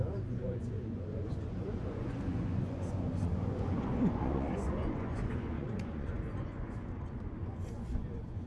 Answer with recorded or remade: remade